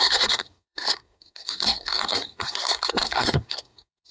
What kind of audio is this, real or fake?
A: fake